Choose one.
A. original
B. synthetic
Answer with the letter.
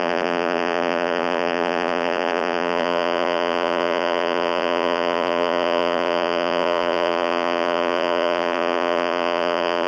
B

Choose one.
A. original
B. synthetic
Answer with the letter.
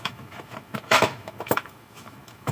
B